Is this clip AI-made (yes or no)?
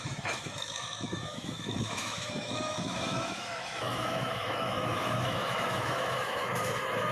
yes